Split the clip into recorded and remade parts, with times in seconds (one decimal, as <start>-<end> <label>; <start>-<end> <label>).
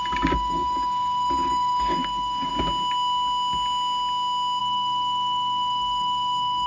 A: 0.0-2.5 remade; 2.5-4.6 recorded; 4.6-6.7 remade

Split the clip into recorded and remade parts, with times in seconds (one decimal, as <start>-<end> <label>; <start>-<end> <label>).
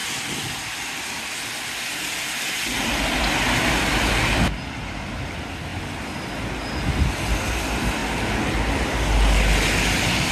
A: 0.0-10.3 recorded